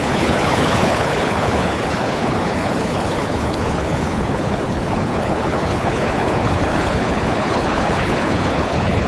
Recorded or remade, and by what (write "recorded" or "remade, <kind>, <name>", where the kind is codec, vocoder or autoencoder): remade, codec, HILCodec